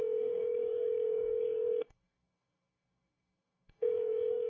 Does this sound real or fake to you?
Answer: fake